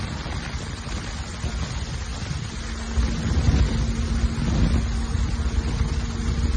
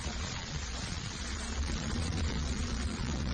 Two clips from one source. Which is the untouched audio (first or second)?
first